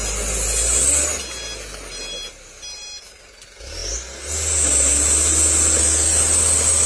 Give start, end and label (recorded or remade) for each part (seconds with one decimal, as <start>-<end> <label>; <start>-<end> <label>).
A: 0.0-6.9 recorded